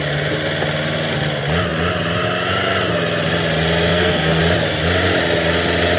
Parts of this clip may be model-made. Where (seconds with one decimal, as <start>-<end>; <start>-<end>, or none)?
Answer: 3.9-4.4